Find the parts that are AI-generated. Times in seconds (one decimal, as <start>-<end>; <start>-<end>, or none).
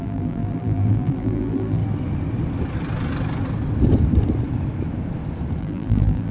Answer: 0.0-1.8; 5.6-6.3